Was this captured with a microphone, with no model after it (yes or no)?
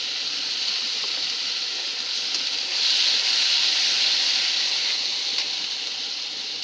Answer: yes